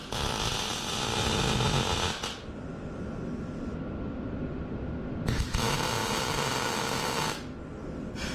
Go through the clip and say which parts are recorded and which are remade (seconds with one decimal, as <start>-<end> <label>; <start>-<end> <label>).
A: 0.0-6.0 recorded; 6.0-7.2 remade; 7.2-8.3 recorded